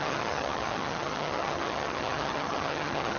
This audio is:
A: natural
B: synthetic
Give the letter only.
B